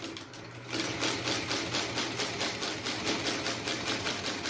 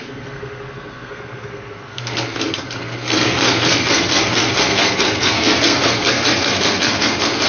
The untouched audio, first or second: first